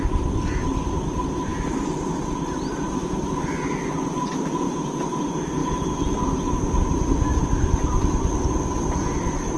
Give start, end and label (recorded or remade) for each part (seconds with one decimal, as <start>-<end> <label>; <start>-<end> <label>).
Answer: 0.0-9.6 recorded